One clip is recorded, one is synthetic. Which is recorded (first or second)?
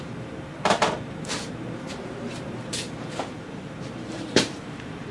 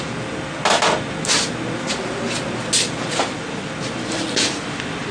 second